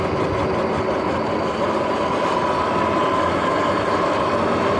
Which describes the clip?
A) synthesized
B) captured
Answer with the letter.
B